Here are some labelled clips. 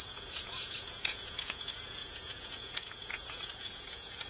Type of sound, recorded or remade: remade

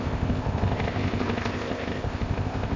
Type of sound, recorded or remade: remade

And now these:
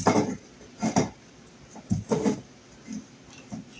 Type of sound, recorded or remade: recorded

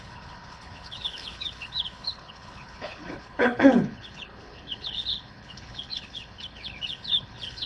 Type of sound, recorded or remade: remade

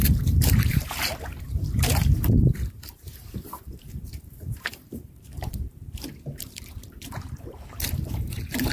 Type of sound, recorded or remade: remade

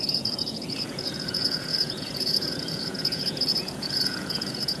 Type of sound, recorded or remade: remade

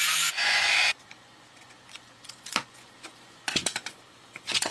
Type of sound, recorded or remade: remade